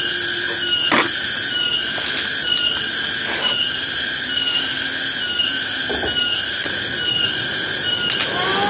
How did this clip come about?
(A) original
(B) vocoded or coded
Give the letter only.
A